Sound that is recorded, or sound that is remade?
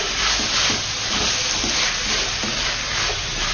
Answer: recorded